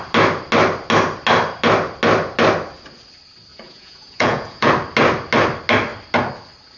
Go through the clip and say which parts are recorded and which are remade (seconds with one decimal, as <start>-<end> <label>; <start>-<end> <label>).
0.0-3.5 recorded; 3.5-4.7 remade; 4.7-6.8 recorded